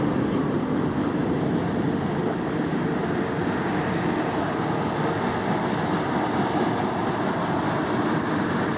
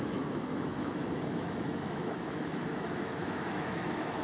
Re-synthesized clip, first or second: second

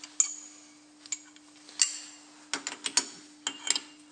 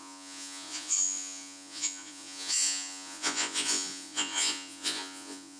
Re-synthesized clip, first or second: second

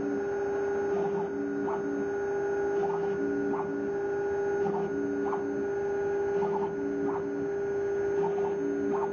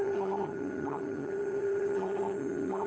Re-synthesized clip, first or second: second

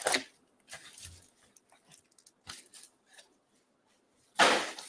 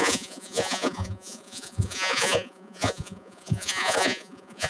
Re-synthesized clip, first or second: second